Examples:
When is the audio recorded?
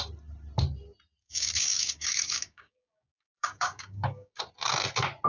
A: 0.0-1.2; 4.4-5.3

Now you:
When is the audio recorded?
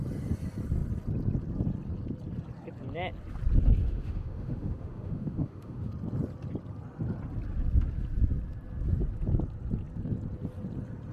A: 0.0-3.8; 5.9-11.1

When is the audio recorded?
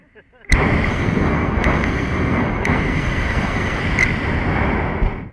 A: 0.0-0.9; 3.8-5.3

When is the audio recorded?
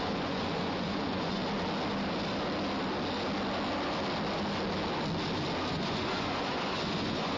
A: 1.4-5.7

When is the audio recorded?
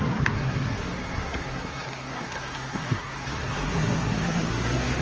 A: none